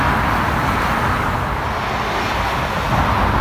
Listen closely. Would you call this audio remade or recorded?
recorded